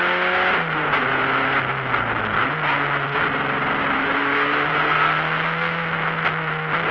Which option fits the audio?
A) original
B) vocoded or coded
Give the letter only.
A